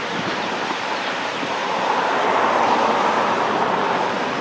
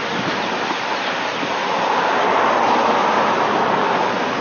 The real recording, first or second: second